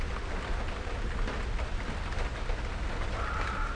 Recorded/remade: recorded